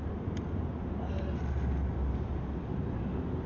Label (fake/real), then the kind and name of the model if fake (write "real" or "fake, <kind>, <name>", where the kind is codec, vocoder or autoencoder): real